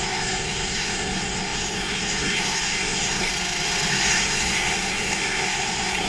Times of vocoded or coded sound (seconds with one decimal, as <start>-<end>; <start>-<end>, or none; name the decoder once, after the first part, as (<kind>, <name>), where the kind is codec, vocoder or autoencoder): 0.0-3.3 (codec, SNAC); 3.9-6.1